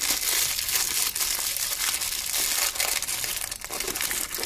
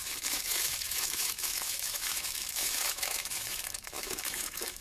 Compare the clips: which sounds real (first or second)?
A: first